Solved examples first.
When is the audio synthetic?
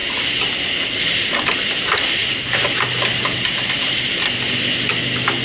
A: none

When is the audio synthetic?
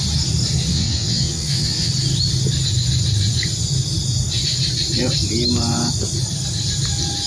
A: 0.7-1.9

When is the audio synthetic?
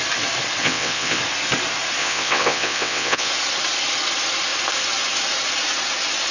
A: 0.6-1.2; 2.0-3.3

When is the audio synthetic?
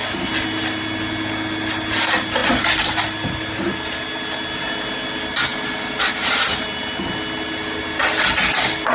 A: none